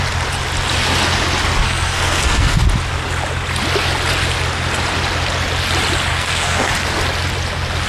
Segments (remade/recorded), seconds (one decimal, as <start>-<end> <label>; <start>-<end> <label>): 0.0-1.6 recorded; 1.6-2.6 remade; 2.6-6.1 recorded; 6.1-6.7 remade; 6.7-7.9 recorded